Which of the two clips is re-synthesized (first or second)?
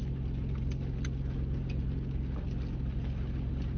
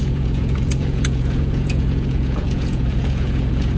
second